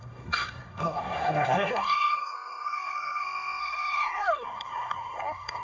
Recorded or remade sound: remade